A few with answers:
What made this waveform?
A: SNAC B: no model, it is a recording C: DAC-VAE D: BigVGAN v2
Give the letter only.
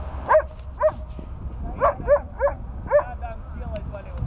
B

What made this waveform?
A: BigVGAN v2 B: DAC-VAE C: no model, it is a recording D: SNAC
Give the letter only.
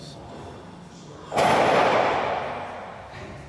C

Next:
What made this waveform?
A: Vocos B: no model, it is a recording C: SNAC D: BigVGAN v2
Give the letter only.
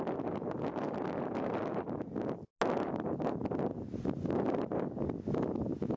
B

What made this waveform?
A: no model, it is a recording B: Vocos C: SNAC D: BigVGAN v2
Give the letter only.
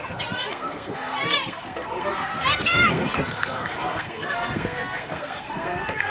C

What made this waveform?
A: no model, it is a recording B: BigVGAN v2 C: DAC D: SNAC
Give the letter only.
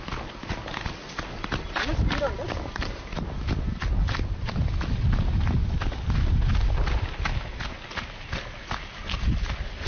A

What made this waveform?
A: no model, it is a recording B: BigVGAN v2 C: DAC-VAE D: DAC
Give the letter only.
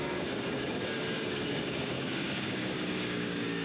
D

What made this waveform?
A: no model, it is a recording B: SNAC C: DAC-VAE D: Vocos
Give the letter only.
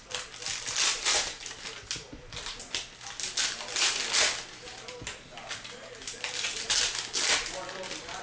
A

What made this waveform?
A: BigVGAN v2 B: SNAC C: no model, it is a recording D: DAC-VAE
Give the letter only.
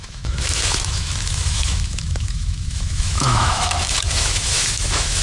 D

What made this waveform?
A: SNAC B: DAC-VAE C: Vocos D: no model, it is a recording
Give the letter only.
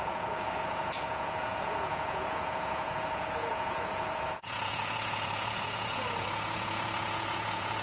C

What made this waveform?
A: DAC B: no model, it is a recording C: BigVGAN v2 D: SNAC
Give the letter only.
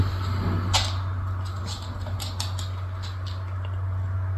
B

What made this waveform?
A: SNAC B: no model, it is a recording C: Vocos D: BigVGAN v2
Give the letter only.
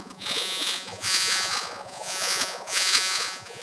C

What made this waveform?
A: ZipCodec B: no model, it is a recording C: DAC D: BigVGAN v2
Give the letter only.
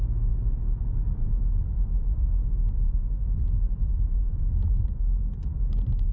B